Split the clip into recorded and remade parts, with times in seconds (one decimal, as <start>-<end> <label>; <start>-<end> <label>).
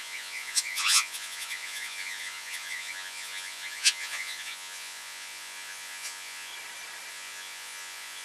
0.0-6.5 remade; 6.5-7.1 recorded; 7.1-8.2 remade